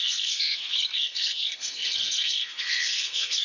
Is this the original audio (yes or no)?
no